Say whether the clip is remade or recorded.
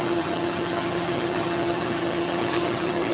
remade